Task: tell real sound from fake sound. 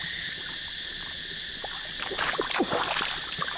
real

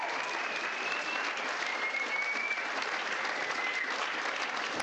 real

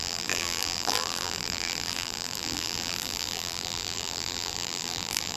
fake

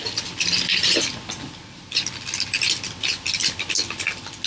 real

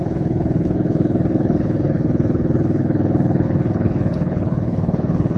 fake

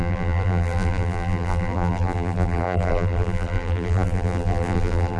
fake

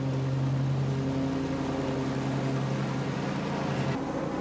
real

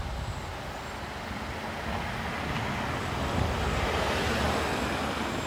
real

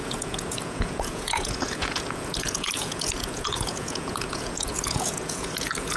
fake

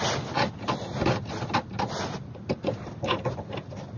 real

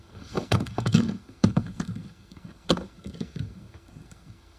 fake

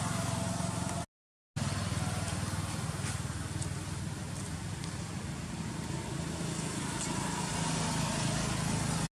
real